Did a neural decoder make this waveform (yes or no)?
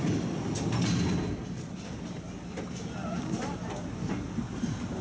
no